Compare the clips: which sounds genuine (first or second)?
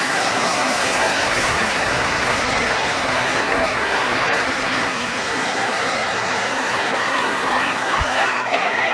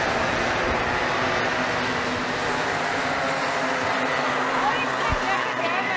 second